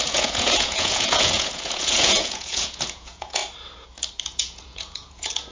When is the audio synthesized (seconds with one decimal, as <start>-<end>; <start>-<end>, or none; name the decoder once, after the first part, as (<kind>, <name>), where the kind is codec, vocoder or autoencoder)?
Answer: 0.0-3.4 (vocoder, Vocos); 4.2-5.5